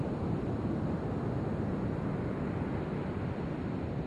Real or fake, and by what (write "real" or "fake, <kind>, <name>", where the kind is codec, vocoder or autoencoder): real